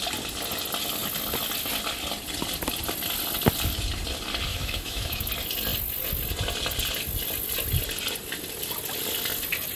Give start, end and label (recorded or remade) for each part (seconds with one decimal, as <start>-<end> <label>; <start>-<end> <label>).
0.0-4.5 recorded; 4.5-5.3 remade; 5.3-9.8 recorded